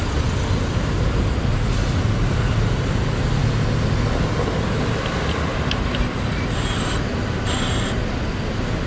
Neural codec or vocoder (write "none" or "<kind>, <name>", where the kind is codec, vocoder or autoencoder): none